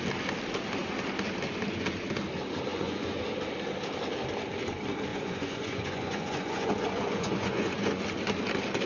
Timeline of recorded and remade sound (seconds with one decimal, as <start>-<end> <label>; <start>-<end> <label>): 0.0-2.7 recorded; 2.7-3.2 remade; 3.2-5.1 recorded; 5.1-8.0 remade; 8.0-8.9 recorded